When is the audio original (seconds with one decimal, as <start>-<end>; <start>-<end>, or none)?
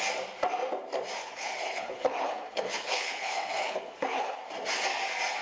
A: 0.0-1.2; 4.4-5.4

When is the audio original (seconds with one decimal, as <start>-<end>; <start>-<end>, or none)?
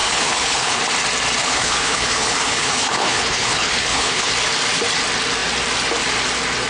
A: 0.8-1.4; 4.3-6.7